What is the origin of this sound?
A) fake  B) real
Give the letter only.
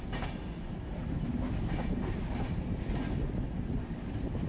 B